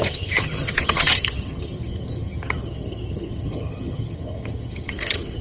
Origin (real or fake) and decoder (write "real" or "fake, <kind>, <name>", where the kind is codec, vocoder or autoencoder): fake, vocoder, HiFi-GAN